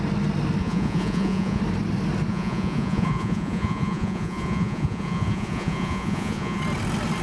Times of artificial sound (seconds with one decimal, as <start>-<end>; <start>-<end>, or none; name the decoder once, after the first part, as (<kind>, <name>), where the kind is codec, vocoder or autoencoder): 0.6-1.6 (vocoder, Vocos); 2.3-6.6